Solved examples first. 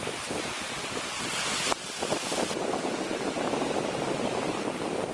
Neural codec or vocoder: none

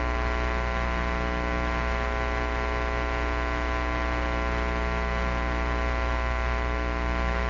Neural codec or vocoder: none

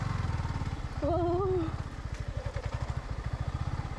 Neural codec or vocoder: none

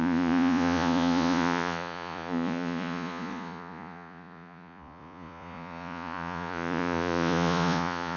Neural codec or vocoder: vocoder, Vocos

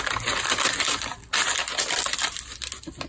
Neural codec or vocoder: none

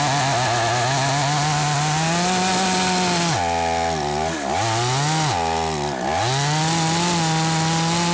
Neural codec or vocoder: none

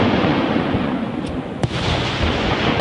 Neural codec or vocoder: vocoder, Vocos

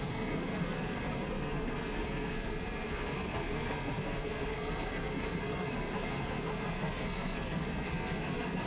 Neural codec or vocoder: codec, SNAC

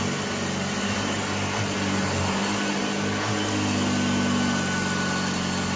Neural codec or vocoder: none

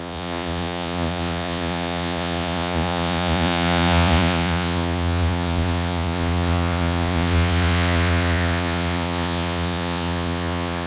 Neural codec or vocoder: vocoder, Vocos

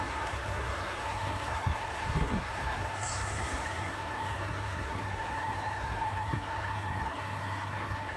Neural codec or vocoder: codec, SNAC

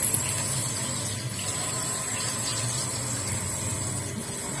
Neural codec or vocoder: none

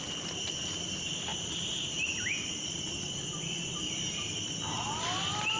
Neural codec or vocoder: none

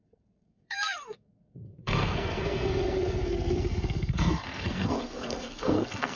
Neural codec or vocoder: codec, SNAC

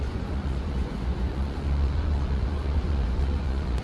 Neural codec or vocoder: vocoder, Vocos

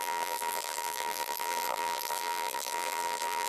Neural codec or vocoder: vocoder, BigVGAN v2